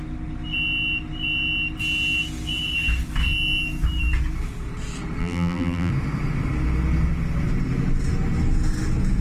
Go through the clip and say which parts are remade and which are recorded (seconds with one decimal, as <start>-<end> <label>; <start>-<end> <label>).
0.0-5.2 recorded; 5.2-5.9 remade; 5.9-9.2 recorded